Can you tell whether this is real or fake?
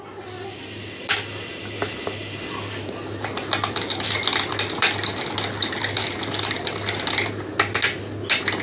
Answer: real